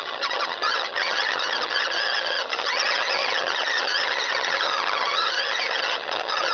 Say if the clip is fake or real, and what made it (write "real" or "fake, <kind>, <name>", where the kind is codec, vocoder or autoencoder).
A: fake, vocoder, HiFi-GAN